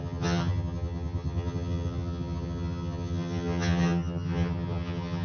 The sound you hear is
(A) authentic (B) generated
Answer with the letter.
B